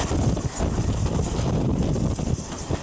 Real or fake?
real